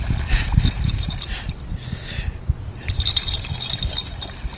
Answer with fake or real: real